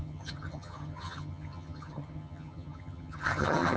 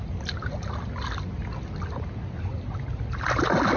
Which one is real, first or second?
second